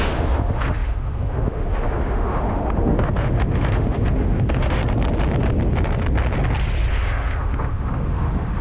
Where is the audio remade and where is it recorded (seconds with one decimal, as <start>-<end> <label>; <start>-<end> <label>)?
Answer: 0.0-4.8 remade; 4.8-6.9 recorded; 6.9-8.6 remade